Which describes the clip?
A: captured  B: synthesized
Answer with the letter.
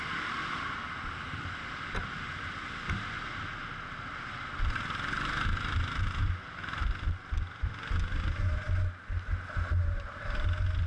A